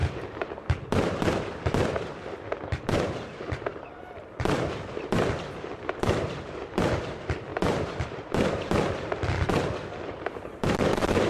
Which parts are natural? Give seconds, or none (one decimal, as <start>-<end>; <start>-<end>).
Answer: none